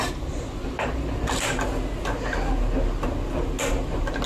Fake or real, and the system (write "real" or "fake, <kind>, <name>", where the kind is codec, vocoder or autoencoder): real